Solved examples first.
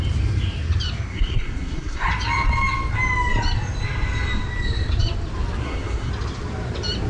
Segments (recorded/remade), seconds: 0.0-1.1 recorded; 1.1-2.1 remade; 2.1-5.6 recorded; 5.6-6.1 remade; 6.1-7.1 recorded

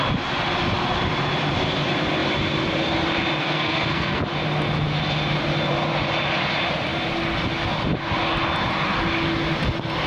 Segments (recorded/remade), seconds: 0.0-3.4 recorded; 3.4-4.2 remade; 4.2-10.1 recorded

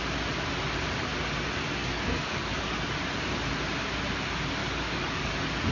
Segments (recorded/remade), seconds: 0.0-1.8 recorded; 1.8-2.7 remade; 2.7-4.6 recorded; 4.6-5.3 remade; 5.3-5.7 recorded